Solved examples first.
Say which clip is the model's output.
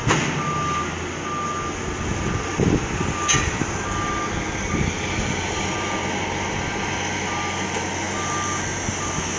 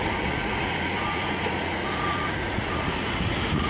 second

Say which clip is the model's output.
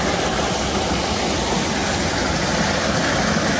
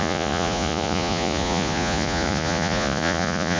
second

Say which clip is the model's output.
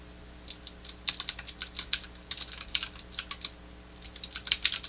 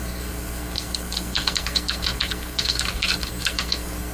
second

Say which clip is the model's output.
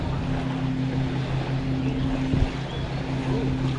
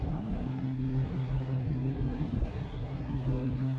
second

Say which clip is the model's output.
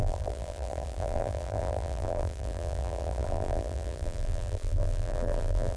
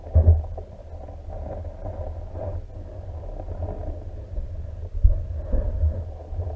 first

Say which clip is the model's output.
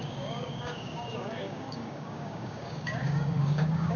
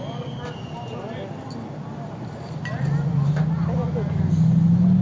first